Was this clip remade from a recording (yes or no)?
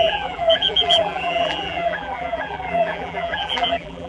yes